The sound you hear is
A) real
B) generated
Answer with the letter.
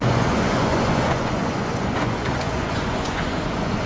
B